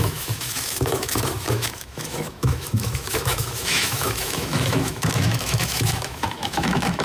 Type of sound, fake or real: fake